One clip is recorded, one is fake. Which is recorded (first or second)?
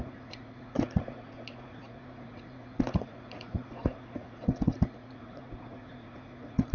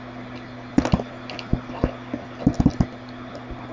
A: second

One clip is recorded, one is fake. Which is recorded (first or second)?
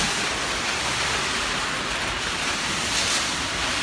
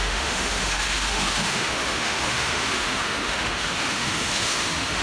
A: first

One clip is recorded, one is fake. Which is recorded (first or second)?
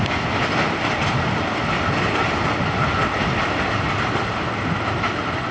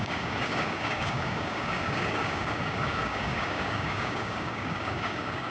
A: first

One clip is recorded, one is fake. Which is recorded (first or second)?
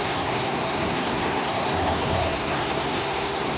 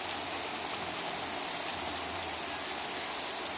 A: second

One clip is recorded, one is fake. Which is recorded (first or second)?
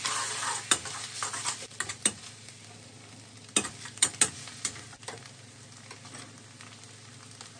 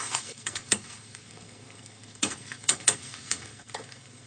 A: first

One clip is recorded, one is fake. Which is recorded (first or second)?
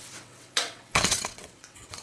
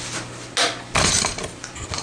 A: second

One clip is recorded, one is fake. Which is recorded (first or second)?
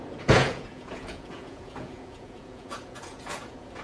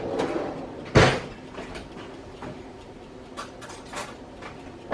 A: second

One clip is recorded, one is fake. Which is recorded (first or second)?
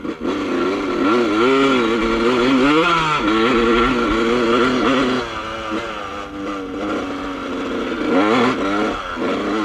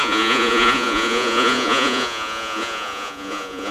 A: first